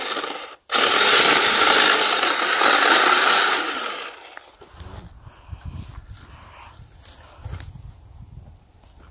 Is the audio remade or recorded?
recorded